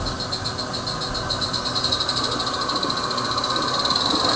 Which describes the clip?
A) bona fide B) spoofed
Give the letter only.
A